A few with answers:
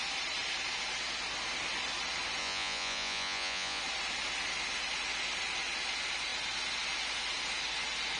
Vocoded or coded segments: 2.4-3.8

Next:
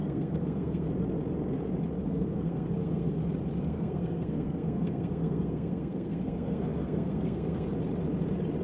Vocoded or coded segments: 0.0-0.9; 2.0-3.2; 3.6-7.7

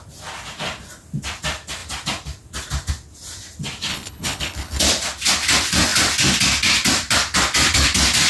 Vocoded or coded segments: 3.9-4.8

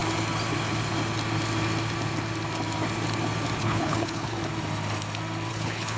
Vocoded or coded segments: 3.6-4.4; 5.5-6.0

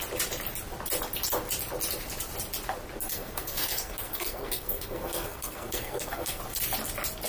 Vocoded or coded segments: 3.1-6.4

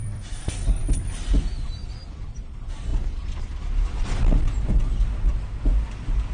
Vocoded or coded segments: 0.0-2.9